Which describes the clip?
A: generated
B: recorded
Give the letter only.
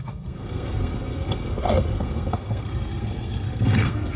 A